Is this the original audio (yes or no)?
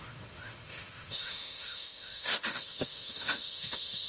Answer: no